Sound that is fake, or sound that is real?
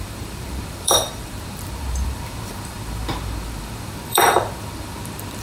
fake